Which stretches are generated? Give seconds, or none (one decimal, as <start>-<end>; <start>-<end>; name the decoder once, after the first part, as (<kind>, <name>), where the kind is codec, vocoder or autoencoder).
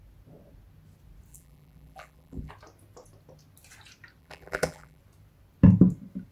1.3-2.5 (vocoder, BigVGAN v2); 4.2-5.0